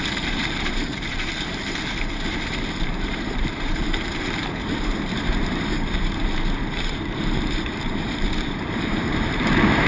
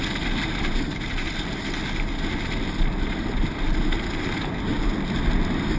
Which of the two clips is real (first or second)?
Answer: second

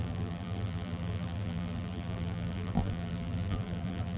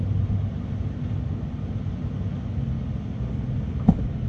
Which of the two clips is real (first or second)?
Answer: second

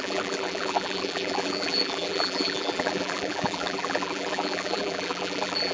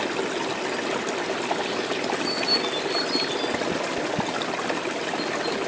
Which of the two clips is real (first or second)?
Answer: second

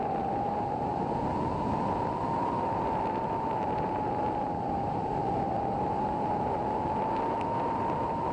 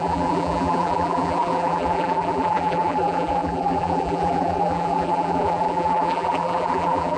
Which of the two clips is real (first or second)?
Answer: first